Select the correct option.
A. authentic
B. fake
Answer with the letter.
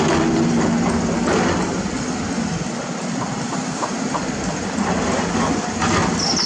A